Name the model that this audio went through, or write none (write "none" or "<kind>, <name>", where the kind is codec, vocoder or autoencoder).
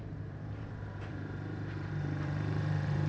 vocoder, BigVGAN v2